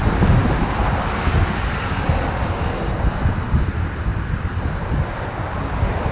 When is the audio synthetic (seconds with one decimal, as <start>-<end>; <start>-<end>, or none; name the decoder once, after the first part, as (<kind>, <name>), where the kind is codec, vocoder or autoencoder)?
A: 4.1-4.9 (vocoder, BigVGAN v2)